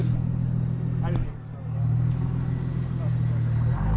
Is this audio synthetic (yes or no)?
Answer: no